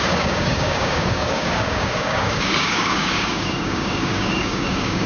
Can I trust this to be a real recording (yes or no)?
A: no